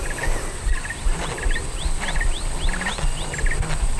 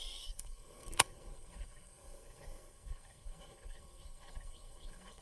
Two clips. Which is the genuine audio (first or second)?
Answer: first